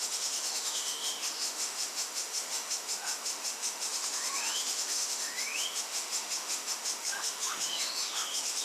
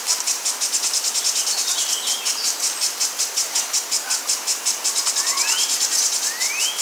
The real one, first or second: second